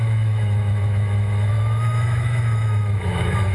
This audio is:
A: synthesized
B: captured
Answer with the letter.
A